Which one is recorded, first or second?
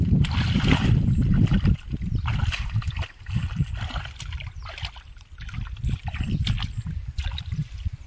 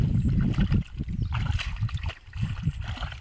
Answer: first